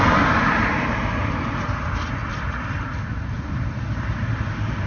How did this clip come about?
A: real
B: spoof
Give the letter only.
B